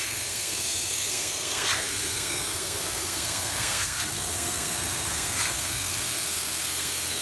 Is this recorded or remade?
remade